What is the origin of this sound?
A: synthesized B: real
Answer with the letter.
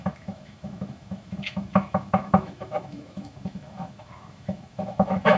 A